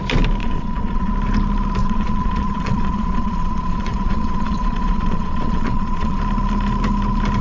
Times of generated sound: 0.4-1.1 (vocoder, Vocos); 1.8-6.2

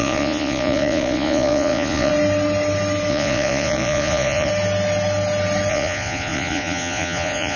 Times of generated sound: 0.0-2.1 (vocoder, Vocos); 3.1-4.5; 5.7-7.6

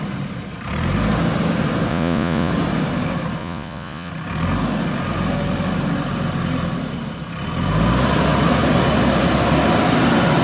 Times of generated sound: 1.9-2.5 (vocoder, Vocos); 3.4-4.1

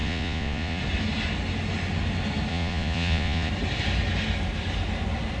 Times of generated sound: 0.0-0.8 (vocoder, Vocos); 2.5-3.5

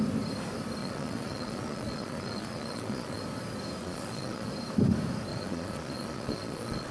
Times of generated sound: 0.8-3.2 (vocoder, Vocos); 3.8-4.5; 5.3-6.9

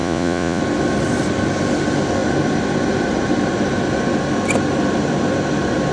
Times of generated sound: 0.0-0.6 (vocoder, Vocos)